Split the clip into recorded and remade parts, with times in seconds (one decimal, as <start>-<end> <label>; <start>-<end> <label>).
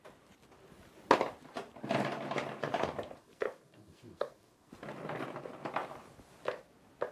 0.0-3.2 recorded; 3.2-4.7 remade; 4.7-7.1 recorded